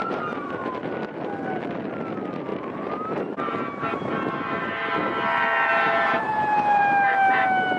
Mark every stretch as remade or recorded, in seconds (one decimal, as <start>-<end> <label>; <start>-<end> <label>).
0.0-0.7 remade; 0.7-2.5 recorded; 2.5-3.5 remade; 3.5-5.7 recorded; 5.7-6.8 remade; 6.8-7.8 recorded